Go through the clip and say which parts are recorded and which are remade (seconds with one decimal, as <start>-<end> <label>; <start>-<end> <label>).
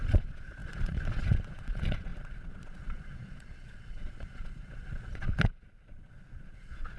0.0-7.0 remade